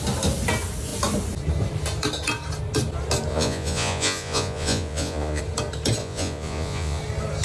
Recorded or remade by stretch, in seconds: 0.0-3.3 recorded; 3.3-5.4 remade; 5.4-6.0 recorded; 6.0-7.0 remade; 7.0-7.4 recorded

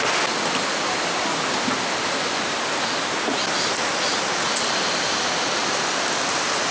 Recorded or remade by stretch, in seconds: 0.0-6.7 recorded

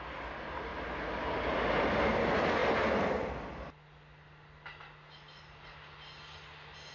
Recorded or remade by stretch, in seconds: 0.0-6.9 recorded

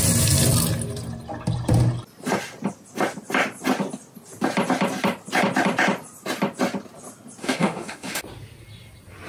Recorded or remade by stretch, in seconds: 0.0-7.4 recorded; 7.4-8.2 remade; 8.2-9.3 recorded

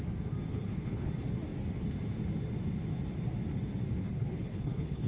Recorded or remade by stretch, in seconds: 0.0-0.5 recorded; 0.5-1.1 remade; 1.1-4.0 recorded; 4.0-5.1 remade